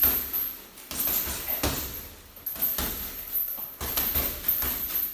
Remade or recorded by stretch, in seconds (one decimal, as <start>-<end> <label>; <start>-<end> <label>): 0.0-5.1 recorded